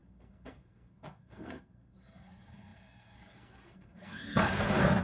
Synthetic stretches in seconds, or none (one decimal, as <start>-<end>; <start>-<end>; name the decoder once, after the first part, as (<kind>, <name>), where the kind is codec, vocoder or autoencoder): 0.0-5.0 (codec, SNAC)